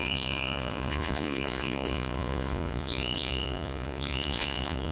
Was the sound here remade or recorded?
remade